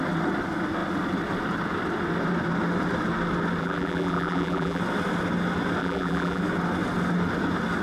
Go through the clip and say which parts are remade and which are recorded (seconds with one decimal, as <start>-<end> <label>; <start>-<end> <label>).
0.0-3.6 recorded; 3.6-4.8 remade; 4.8-5.8 recorded; 5.8-6.4 remade; 6.4-7.8 recorded